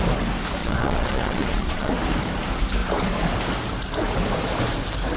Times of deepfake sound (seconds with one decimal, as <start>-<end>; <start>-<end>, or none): 0.6-1.9